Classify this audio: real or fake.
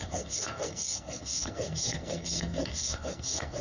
fake